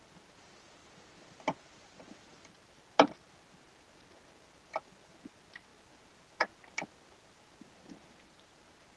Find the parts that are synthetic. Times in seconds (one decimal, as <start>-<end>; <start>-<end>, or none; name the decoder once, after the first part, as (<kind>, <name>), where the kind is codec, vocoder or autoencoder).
none